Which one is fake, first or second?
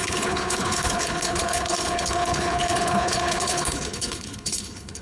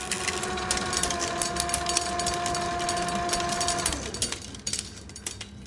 first